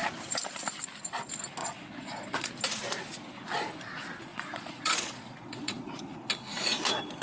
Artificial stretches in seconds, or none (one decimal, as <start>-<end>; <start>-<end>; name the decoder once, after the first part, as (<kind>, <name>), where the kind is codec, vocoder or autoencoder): 1.6-2.5 (vocoder, Vocos); 4.3-6.0